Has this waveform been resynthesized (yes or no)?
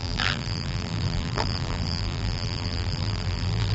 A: yes